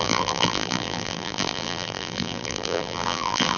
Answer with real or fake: fake